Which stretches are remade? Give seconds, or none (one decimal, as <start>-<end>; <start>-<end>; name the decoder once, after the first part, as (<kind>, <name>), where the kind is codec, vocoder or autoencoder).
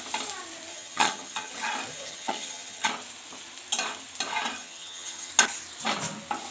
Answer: 0.7-1.5 (vocoder, HiFi-GAN); 1.9-2.9; 4.6-5.3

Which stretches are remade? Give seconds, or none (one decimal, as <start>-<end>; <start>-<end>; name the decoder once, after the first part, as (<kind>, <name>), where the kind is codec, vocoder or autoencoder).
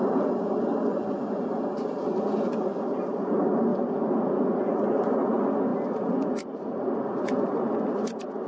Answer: none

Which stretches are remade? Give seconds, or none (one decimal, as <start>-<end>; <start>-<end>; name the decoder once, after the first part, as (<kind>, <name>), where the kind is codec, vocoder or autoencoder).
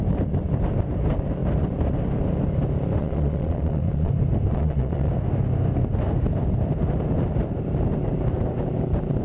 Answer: 3.0-4.1 (vocoder, Vocos); 4.5-5.1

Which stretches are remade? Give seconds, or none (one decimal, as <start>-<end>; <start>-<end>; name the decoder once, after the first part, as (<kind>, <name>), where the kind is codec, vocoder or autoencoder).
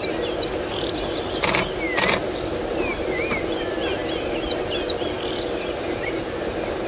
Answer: none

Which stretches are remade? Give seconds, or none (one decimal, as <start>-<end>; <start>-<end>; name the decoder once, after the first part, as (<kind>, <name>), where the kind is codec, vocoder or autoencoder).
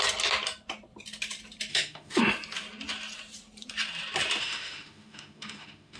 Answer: 1.7-2.2 (autoencoder, DAC-VAE); 4.4-6.0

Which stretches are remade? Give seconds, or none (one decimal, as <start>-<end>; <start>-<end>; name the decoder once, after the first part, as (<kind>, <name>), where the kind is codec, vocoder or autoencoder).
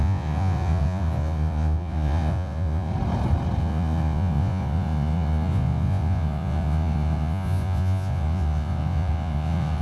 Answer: 0.0-2.9 (vocoder, Vocos); 3.6-9.8